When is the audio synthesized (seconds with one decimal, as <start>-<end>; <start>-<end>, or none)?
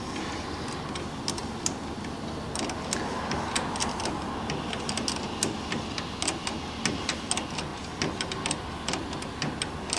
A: none